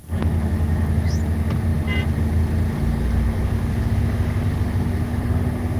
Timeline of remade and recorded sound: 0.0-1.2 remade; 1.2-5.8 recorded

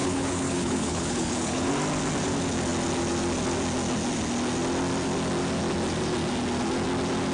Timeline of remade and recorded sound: 0.0-1.7 remade; 1.7-7.3 recorded

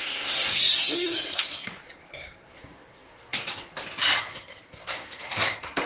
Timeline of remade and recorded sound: 0.0-3.7 remade; 3.7-4.2 recorded; 4.2-5.9 remade

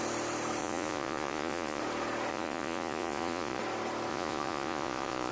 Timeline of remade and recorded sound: 0.0-0.6 recorded; 0.6-1.8 remade; 1.8-2.3 recorded; 2.3-3.6 remade; 3.6-4.1 recorded; 4.1-5.3 remade

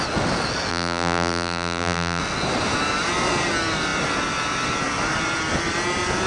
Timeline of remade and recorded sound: 0.0-0.7 recorded; 0.7-2.2 remade; 2.2-6.3 recorded

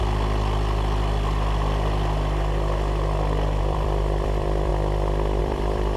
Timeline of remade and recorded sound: 0.0-3.6 recorded; 3.6-4.7 remade; 4.7-5.4 recorded; 5.4-6.0 remade

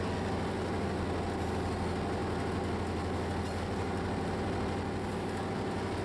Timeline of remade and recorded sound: 0.0-6.0 recorded

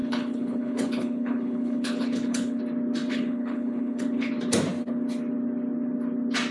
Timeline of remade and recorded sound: 0.0-2.6 remade; 2.6-3.1 recorded; 3.1-4.3 remade; 4.3-6.5 recorded